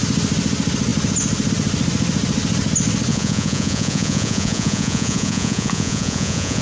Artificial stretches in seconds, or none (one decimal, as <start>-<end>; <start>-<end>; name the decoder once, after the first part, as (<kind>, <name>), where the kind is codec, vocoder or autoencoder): 3.1-6.6 (vocoder, Vocos)